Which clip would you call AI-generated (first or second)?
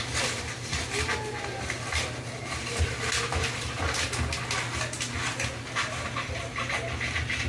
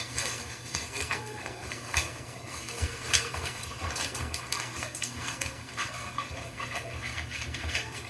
second